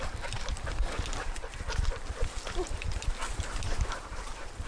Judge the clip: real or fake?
fake